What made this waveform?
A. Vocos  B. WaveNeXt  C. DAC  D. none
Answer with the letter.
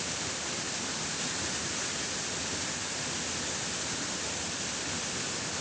D